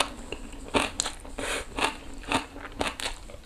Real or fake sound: real